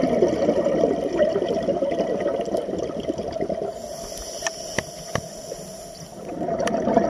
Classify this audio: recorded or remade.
recorded